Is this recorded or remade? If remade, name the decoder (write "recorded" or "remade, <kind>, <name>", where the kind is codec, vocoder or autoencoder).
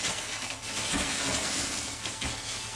remade, codec, SNAC